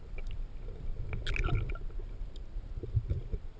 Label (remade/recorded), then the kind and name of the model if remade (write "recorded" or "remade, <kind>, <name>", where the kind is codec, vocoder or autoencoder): recorded